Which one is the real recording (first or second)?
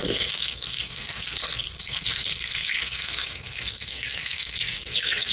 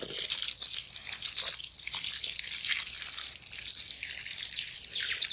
second